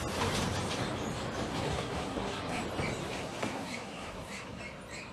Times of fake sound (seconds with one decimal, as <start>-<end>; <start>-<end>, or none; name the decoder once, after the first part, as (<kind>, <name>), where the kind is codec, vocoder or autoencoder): 1.5-2.6 (codec, SNAC); 3.0-4.6